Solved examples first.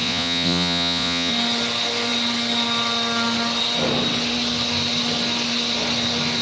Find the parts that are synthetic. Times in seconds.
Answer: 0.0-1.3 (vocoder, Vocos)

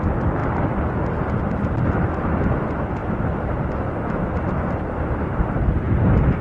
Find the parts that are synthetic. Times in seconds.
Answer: 3.0-3.7 (vocoder, BigVGAN v2)

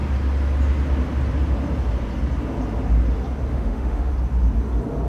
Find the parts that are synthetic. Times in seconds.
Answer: 3.5-4.1 (autoencoder, DAC-VAE)

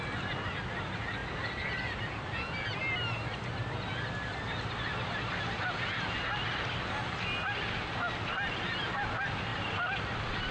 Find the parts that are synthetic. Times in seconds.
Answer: 1.2-2.0 (vocoder, BigVGAN v2); 9.5-10.5

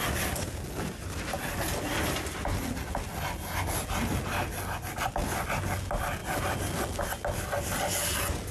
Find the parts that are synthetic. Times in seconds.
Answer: none

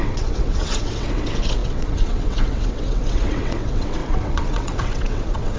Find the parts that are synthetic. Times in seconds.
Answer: 0.0-5.6 (vocoder, WaveNeXt)

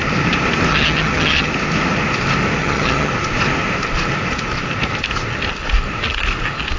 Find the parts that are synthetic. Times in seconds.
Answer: 0.7-1.5 (vocoder, HiFi-GAN); 2.6-3.1

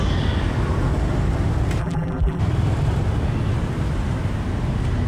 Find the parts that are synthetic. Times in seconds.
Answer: 1.8-2.4 (vocoder, BigVGAN v2)